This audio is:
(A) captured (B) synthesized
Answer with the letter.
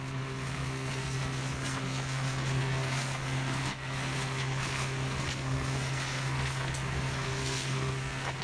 B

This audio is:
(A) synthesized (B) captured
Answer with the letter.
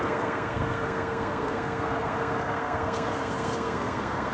A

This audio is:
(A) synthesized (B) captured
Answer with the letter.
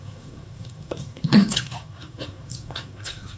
A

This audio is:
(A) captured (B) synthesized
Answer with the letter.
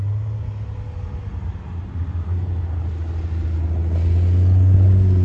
A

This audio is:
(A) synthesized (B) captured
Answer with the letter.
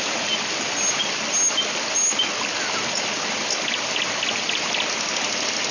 B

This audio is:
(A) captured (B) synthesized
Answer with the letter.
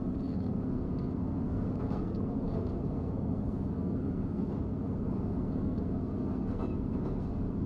B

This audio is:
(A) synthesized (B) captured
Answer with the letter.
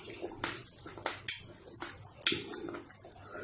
B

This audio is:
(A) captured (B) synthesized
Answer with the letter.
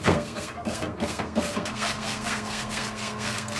B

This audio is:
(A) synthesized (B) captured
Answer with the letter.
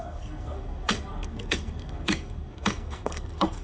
A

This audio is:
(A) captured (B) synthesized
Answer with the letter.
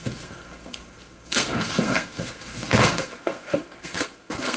B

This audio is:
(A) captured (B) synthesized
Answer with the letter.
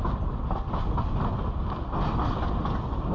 A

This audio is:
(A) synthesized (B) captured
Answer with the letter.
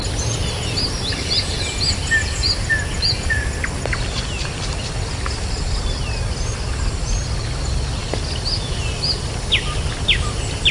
B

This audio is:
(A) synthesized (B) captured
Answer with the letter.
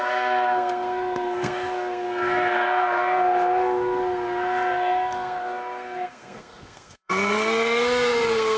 A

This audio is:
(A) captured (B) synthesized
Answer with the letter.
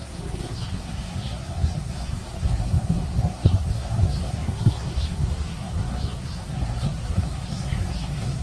B